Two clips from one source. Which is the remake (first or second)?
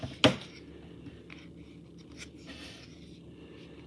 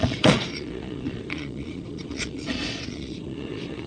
second